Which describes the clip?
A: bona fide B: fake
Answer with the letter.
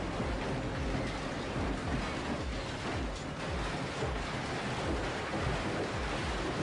A